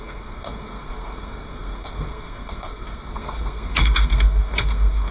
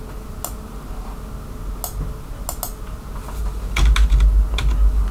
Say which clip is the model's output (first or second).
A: first